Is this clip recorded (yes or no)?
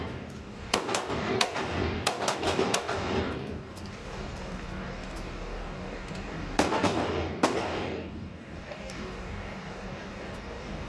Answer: no